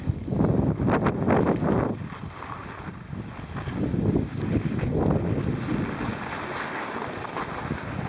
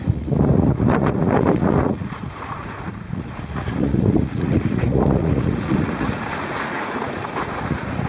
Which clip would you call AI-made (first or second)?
second